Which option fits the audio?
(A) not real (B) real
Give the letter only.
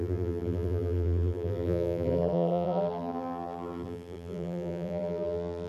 A